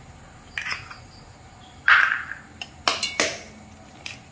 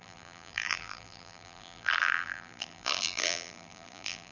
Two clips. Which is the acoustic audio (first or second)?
first